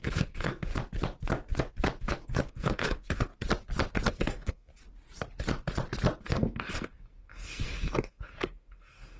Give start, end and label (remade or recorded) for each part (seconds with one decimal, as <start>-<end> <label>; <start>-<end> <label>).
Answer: 0.0-0.7 remade; 0.7-2.0 recorded; 2.0-3.3 remade; 3.3-4.1 recorded; 4.1-4.7 remade; 4.7-6.2 recorded; 6.2-9.2 remade